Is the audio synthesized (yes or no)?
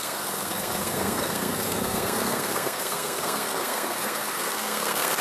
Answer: yes